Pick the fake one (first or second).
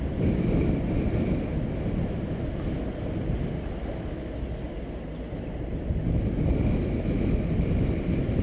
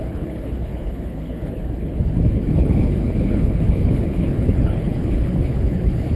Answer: second